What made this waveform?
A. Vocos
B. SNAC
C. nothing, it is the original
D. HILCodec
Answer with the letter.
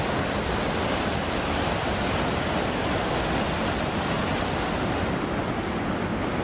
C